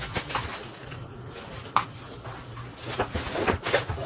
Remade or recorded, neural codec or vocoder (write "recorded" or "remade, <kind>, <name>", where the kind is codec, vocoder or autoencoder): recorded